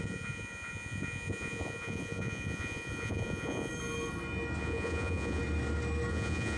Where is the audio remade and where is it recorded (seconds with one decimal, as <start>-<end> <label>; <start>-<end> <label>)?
0.0-3.7 remade; 3.7-4.6 recorded; 4.6-5.4 remade; 5.4-6.1 recorded; 6.1-6.6 remade